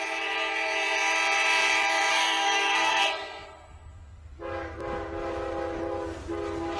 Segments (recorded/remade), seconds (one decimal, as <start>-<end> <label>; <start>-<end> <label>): 0.0-2.1 recorded; 2.1-3.0 remade; 3.0-6.8 recorded

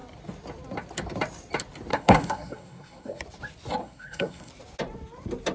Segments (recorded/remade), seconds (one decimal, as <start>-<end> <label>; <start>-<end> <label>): 0.0-1.9 recorded; 1.9-3.2 remade; 3.2-3.8 recorded; 3.8-4.5 remade; 4.5-5.5 recorded

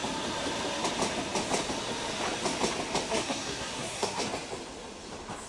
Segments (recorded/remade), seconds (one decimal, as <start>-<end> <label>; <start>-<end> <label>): 0.0-3.1 recorded; 3.1-4.2 remade; 4.2-5.5 recorded

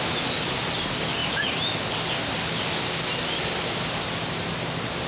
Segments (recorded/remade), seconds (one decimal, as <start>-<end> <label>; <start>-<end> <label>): 0.0-5.1 recorded

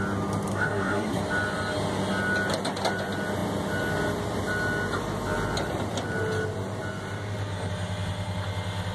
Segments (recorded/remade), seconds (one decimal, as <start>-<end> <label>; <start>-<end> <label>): 0.0-0.5 recorded; 0.5-1.2 remade; 1.2-8.9 recorded

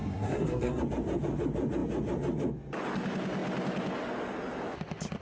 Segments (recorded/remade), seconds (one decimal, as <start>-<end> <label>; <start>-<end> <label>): 0.0-0.8 remade; 0.8-5.2 recorded

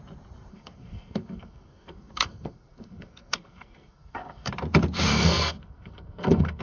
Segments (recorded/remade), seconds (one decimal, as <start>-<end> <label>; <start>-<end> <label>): 0.0-0.5 recorded; 0.5-4.5 remade; 4.5-5.1 recorded; 5.1-6.6 remade

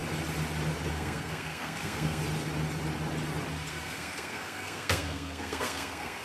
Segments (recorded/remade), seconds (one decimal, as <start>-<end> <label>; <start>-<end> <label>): 0.0-0.9 recorded; 0.9-2.2 remade; 2.2-3.7 recorded; 3.7-6.2 remade